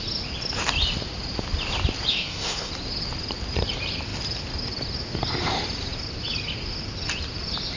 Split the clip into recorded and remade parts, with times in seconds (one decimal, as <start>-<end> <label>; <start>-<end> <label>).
0.0-2.1 recorded; 2.1-2.7 remade; 2.7-7.8 recorded